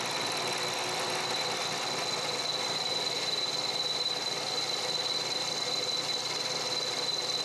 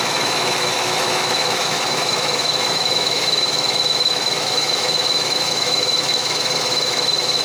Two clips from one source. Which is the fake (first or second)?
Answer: second